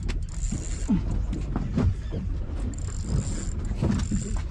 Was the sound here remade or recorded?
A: recorded